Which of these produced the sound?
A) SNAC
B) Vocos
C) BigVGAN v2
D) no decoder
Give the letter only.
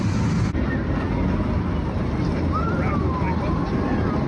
D